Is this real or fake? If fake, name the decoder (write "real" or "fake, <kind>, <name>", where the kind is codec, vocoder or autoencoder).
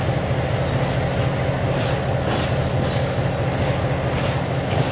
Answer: real